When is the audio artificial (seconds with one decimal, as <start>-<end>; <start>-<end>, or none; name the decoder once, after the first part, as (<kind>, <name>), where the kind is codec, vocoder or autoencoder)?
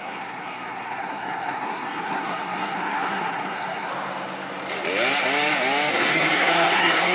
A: 0.0-3.9 (codec, SNAC); 5.9-7.1